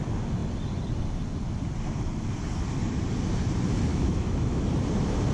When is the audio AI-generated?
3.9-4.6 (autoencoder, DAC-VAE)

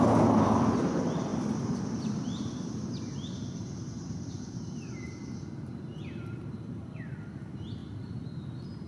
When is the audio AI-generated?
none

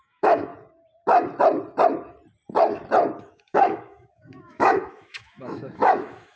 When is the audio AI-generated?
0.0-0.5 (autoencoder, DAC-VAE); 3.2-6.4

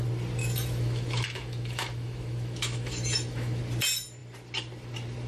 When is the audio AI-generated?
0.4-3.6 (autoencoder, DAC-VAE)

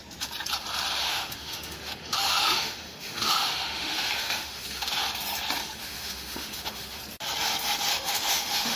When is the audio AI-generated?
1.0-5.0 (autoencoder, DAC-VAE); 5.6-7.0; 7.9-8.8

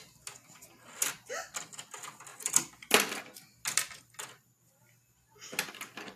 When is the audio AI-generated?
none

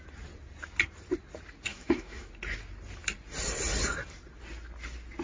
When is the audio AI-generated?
1.7-2.3 (autoencoder, DAC-VAE)

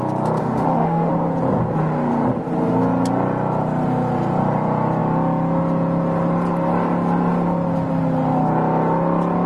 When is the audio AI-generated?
0.4-1.1 (autoencoder, DAC-VAE)